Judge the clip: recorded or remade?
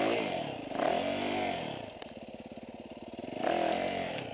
recorded